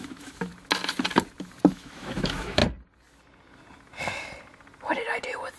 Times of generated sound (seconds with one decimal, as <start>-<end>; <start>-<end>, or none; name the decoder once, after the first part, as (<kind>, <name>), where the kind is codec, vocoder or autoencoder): 0.0-0.5 (autoencoder, DAC-VAE); 1.7-2.6